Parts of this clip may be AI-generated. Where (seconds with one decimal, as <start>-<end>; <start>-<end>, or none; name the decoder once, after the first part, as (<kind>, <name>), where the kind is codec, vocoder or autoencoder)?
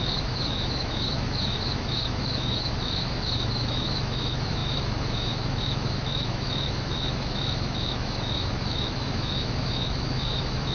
0.0-10.7 (autoencoder, DAC-VAE)